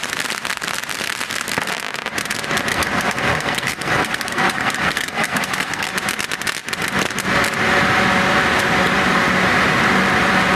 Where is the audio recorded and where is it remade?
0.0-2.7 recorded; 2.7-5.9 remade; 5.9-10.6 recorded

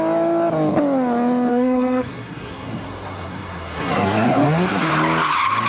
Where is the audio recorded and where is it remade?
0.0-1.5 recorded; 1.5-4.9 remade; 4.9-5.7 recorded

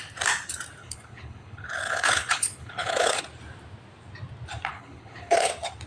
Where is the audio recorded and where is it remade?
0.0-0.8 recorded; 0.8-3.2 remade; 3.2-4.7 recorded; 4.7-5.5 remade; 5.5-5.9 recorded